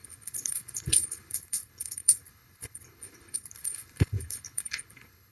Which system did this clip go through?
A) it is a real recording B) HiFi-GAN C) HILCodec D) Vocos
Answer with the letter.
C